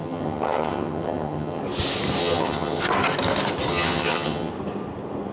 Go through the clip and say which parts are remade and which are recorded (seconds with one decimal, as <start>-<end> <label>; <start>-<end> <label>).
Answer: 0.0-1.6 remade; 1.6-2.2 recorded; 2.2-2.8 remade; 2.8-3.7 recorded; 3.7-4.5 remade; 4.5-5.3 recorded